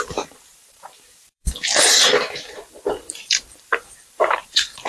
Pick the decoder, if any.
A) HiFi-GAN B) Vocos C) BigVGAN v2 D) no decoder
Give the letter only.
C